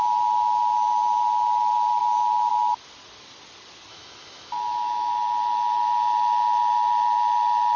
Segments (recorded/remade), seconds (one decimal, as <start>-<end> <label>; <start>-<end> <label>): 0.0-3.9 recorded; 3.9-5.1 remade; 5.1-7.8 recorded